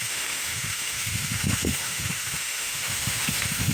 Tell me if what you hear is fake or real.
fake